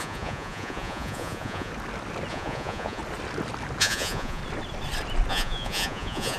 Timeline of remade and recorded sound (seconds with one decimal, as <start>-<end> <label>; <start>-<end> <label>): 0.0-1.7 remade; 1.7-2.3 recorded; 2.3-3.0 remade; 3.0-3.8 recorded; 3.8-4.4 remade; 4.4-5.3 recorded; 5.3-6.4 remade